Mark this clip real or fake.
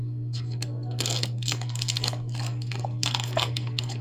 fake